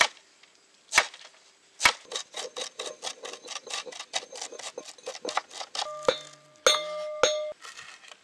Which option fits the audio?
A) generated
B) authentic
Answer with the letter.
B